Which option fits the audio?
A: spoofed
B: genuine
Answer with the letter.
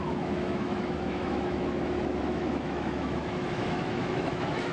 A